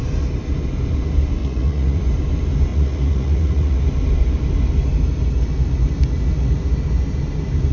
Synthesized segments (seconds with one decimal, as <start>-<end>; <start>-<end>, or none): 1.4-2.0; 2.7-3.8